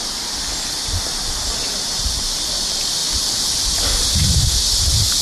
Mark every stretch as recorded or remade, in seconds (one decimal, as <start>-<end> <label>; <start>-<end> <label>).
0.0-1.6 recorded; 1.6-2.5 remade; 2.5-5.2 recorded